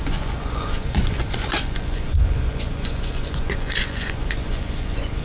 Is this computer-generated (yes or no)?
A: yes